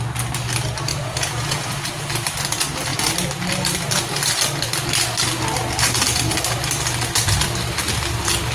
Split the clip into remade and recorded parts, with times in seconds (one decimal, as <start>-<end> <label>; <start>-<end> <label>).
0.0-0.9 recorded; 0.9-2.0 remade; 2.0-8.5 recorded